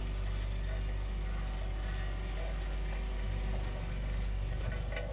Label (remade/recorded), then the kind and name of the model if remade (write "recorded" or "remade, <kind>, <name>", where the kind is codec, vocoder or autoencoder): recorded